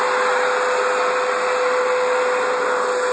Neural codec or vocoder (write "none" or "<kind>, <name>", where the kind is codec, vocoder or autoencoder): none